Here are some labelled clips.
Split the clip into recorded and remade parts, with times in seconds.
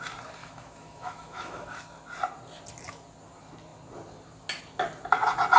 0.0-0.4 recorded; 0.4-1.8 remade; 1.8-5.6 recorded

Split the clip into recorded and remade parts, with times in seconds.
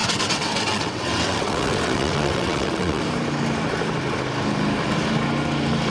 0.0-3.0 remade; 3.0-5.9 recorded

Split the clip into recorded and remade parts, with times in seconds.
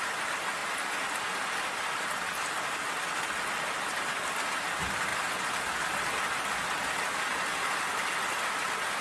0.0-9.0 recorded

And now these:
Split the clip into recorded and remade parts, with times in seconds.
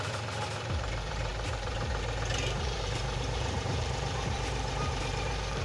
0.0-1.3 remade; 1.3-2.6 recorded; 2.6-5.6 remade